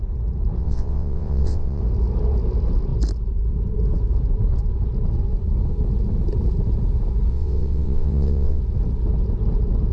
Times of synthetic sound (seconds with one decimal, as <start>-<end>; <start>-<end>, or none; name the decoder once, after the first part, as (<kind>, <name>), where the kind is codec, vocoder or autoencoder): 0.6-1.8 (vocoder, WaveNeXt); 7.3-8.6